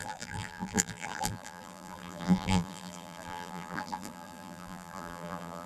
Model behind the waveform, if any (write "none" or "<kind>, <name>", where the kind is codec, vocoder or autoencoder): vocoder, BigVGAN v2